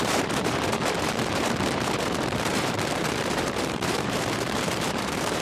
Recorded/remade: remade